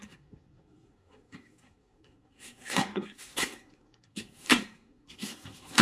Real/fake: fake